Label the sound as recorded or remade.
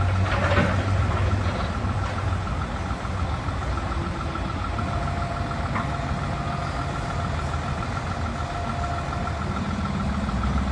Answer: recorded